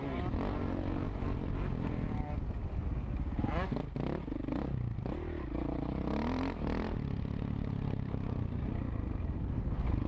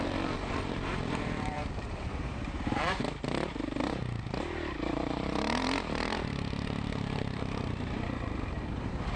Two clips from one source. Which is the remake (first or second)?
second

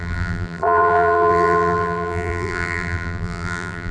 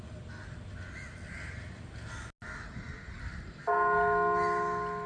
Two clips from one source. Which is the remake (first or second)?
first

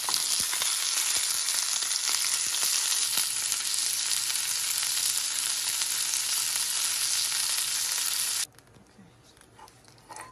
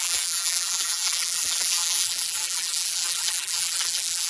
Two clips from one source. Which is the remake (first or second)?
second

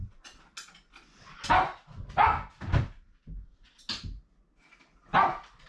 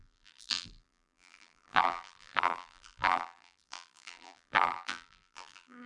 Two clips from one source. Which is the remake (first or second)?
second